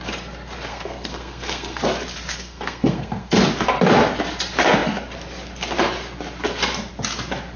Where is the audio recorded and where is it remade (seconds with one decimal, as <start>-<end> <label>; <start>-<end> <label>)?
0.0-0.7 recorded; 0.7-1.8 remade; 1.8-2.3 recorded; 2.3-3.4 remade; 3.4-7.6 recorded